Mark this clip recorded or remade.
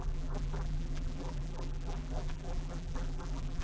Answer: remade